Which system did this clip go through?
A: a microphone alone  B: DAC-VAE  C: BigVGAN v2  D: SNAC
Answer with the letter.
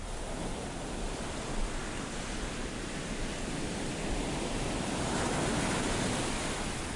A